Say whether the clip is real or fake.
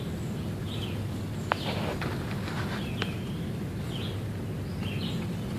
real